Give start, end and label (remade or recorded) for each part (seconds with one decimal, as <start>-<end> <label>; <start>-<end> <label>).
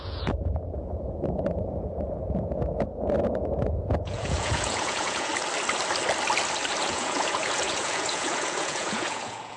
0.0-5.3 remade; 5.3-6.8 recorded; 6.8-9.6 remade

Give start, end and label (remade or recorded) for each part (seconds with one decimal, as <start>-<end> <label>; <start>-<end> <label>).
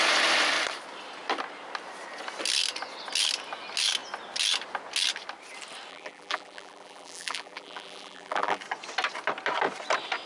0.0-5.9 recorded; 5.9-8.6 remade; 8.6-10.3 recorded